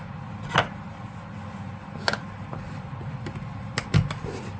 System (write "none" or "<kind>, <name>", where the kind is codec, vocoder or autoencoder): none